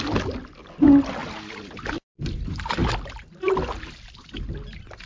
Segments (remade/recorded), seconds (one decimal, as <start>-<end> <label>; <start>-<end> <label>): 0.0-5.1 recorded